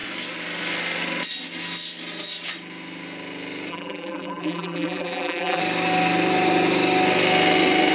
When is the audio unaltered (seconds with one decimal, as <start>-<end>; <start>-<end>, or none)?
0.0-3.7; 5.6-7.9